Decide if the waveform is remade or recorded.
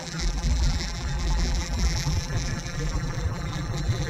remade